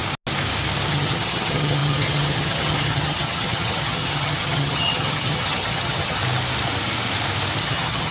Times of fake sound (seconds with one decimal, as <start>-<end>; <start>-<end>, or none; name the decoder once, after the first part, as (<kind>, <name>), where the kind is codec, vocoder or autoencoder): 0.9-6.2 (vocoder, HiFi-GAN); 7.6-8.1